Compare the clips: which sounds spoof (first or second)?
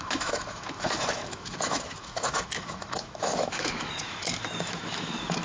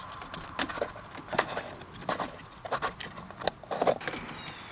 first